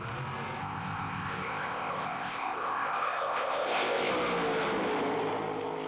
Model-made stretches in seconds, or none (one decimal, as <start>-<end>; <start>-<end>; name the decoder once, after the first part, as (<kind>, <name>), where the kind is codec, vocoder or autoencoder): 0.6-4.1 (codec, ZipCodec)